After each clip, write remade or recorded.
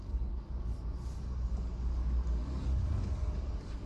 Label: remade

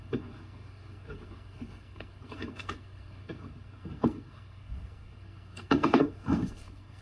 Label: remade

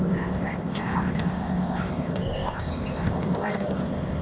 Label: remade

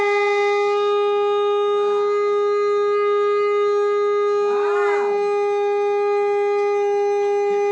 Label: recorded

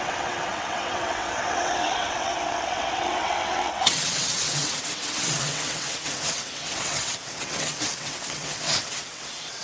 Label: remade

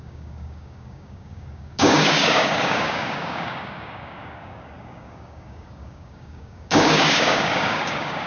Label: remade